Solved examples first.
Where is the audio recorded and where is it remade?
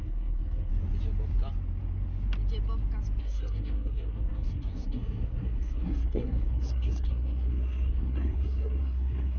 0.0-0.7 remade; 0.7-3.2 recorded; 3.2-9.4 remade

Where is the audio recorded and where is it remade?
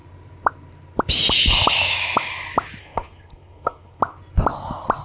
0.0-2.8 recorded; 2.8-4.0 remade; 4.0-5.0 recorded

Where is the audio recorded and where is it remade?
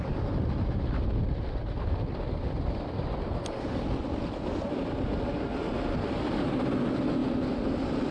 0.0-8.1 recorded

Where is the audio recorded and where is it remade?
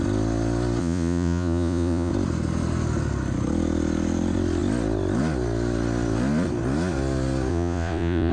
0.0-0.8 recorded; 0.8-2.1 remade; 2.1-7.5 recorded; 7.5-8.3 remade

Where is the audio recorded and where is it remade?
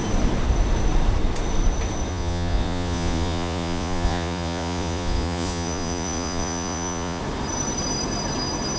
0.0-2.1 recorded; 2.1-7.2 remade; 7.2-8.8 recorded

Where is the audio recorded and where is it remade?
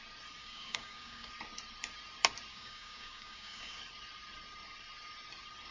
0.0-0.4 recorded; 0.4-1.3 remade; 1.3-2.5 recorded; 2.5-3.8 remade; 3.8-5.7 recorded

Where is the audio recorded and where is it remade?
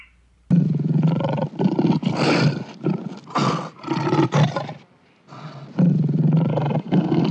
0.0-6.5 recorded; 6.5-7.3 remade